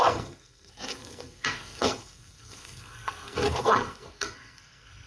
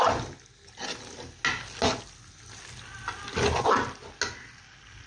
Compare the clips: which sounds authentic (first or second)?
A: second